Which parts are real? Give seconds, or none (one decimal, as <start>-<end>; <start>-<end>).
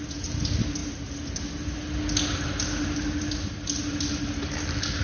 0.0-5.0